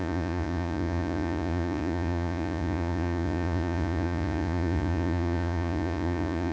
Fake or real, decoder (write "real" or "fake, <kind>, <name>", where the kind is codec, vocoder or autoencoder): fake, vocoder, Vocos